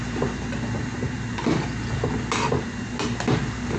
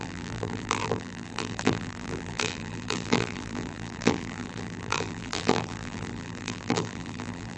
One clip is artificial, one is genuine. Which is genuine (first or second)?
first